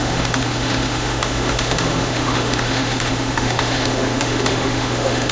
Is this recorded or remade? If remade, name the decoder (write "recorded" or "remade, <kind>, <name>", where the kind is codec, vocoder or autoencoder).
remade, autoencoder, DAC-VAE